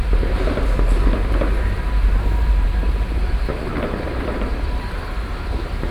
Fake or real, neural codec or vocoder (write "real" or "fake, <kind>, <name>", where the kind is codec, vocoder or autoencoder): fake, vocoder, BigVGAN v2